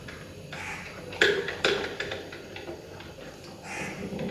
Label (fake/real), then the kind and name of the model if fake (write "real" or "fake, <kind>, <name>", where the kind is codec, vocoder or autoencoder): fake, vocoder, BigVGAN v2